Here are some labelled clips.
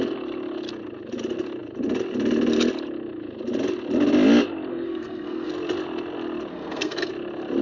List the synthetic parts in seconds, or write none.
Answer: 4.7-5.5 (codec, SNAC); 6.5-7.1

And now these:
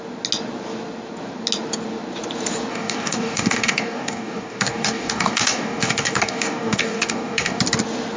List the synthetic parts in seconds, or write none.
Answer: 2.7-7.6 (codec, DAC)

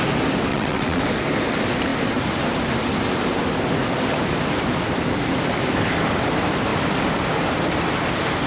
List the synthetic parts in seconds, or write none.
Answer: 0.5-1.0 (vocoder, WaveNeXt)